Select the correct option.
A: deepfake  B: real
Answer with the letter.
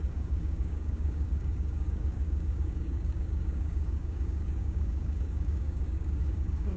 A